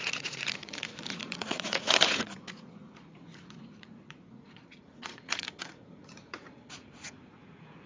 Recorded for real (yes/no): no